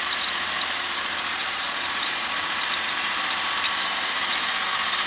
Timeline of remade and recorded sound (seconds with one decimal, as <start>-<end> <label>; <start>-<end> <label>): 0.0-1.4 recorded; 1.4-4.5 remade; 4.5-5.1 recorded